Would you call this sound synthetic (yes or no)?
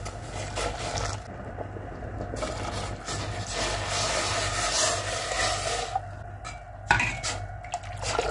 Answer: no